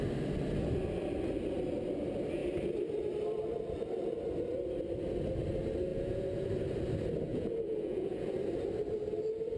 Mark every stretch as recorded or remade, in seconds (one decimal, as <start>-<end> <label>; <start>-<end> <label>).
0.0-5.9 recorded; 5.9-6.5 remade; 6.5-7.3 recorded; 7.3-8.3 remade; 8.3-9.6 recorded